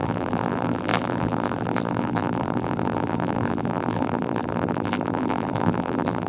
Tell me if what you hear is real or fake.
fake